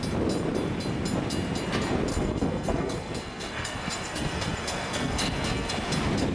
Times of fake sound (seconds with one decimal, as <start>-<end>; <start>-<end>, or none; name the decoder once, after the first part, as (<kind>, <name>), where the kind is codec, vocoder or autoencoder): 2.1-5.7 (codec, SNAC)